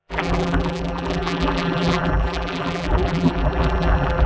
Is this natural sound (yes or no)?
no